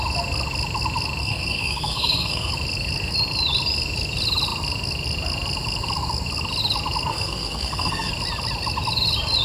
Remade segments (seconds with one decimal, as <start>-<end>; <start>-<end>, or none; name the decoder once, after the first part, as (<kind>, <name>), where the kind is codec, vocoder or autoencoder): 1.2-2.5 (codec, SNAC); 7.1-8.1